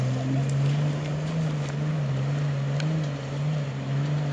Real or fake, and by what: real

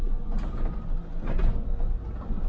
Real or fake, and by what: real